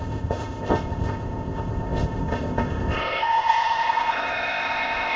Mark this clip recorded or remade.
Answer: remade